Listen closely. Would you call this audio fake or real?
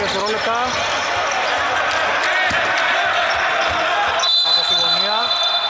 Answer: real